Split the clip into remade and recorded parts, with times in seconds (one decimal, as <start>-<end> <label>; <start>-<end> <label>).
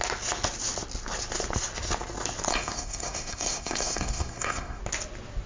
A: 0.0-2.5 recorded; 2.5-4.8 remade; 4.8-5.5 recorded